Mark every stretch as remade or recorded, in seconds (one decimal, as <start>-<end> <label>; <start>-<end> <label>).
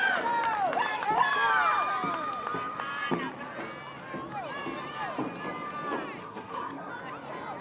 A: 0.0-6.2 recorded; 6.2-6.9 remade; 6.9-7.6 recorded